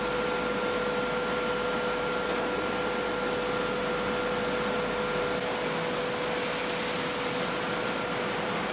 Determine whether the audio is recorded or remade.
recorded